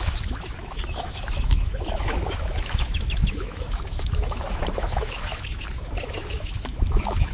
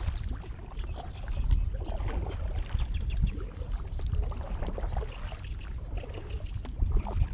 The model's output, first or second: first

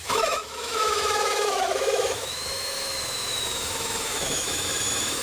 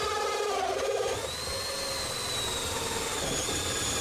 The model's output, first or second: first